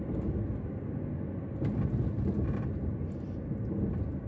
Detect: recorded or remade recorded